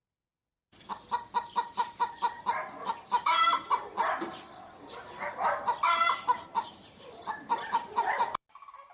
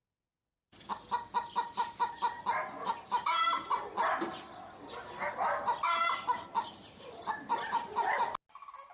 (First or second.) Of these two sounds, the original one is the second